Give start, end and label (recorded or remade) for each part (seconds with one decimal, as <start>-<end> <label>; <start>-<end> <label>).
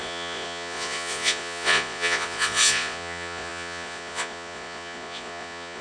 0.0-5.8 remade